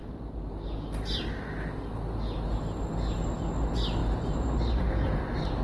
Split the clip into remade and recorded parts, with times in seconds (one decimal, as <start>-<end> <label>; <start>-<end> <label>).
0.0-4.0 recorded; 4.0-4.9 remade; 4.9-5.6 recorded